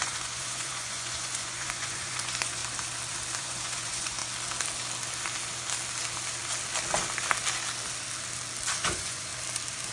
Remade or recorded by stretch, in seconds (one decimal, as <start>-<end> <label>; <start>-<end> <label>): 0.0-2.6 remade; 2.6-3.4 recorded; 3.4-4.2 remade; 4.2-8.8 recorded; 8.8-9.3 remade; 9.3-9.9 recorded